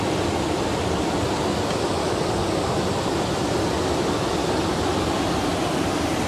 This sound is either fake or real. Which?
real